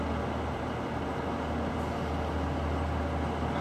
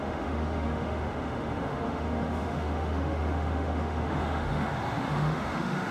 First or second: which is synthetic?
second